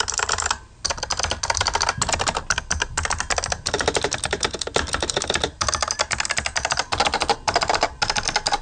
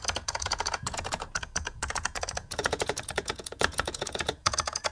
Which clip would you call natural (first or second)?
first